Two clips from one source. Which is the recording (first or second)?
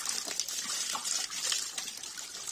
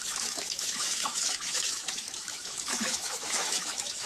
first